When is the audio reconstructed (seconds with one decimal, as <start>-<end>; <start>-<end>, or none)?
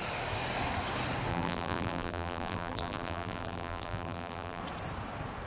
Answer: 1.3-4.6